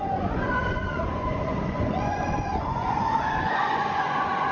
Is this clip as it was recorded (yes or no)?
no